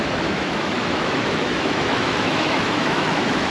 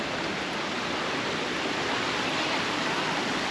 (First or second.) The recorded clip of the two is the second